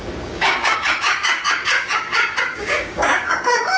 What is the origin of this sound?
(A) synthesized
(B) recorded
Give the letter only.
A